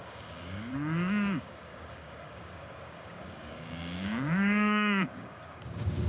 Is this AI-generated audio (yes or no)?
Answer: yes